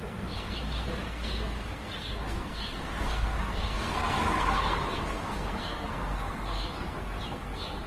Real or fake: fake